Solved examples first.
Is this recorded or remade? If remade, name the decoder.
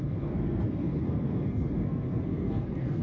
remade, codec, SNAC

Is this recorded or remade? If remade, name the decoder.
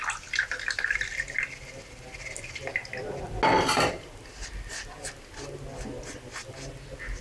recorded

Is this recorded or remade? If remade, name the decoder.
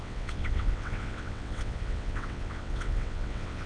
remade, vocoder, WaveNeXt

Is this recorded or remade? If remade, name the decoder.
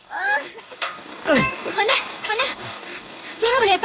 remade, codec, DAC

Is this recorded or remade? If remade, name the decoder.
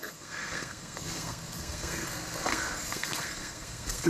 remade, codec, SNAC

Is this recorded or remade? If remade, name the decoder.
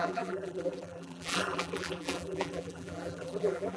remade, vocoder, BigVGAN v2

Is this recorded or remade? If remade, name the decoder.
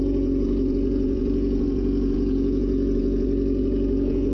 remade, vocoder, Vocos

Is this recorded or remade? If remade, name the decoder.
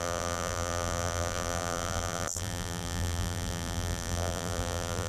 remade, vocoder, BigVGAN v2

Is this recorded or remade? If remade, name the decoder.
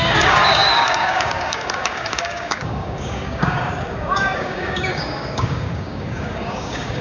remade, codec, DAC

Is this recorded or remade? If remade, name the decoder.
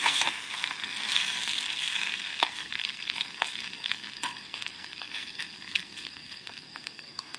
remade, codec, SNAC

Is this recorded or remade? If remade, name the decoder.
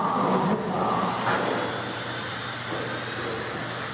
recorded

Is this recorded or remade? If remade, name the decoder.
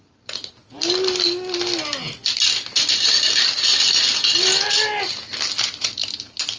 recorded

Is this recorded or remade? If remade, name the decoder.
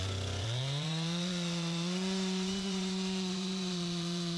remade, vocoder, Vocos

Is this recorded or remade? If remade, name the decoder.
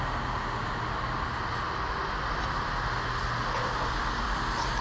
recorded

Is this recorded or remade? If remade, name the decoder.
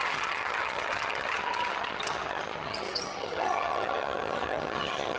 remade, vocoder, HiFi-GAN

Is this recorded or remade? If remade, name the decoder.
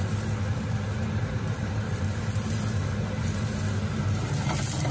recorded